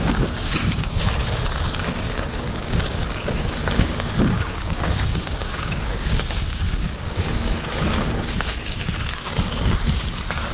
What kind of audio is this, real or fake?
fake